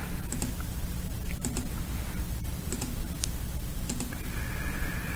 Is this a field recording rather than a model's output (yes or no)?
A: yes